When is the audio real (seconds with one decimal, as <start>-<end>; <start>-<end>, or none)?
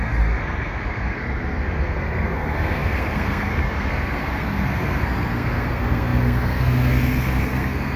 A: none